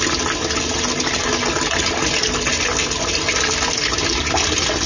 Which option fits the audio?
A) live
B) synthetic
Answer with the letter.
A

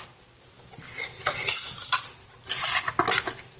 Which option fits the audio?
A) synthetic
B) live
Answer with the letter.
B